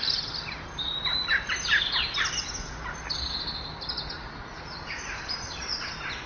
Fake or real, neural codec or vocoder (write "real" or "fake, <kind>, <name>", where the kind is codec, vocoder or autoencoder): real